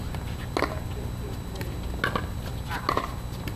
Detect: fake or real real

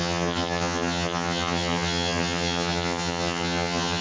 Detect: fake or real fake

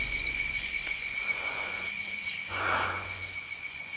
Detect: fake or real fake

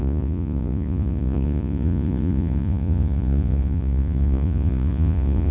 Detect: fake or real fake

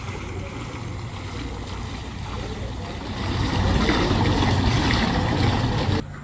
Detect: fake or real real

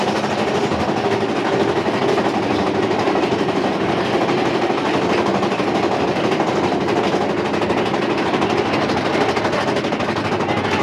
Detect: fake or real real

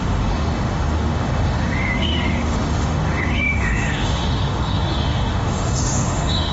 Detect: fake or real fake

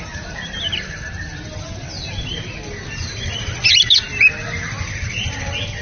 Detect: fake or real real